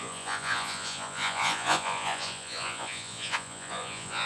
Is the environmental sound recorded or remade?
remade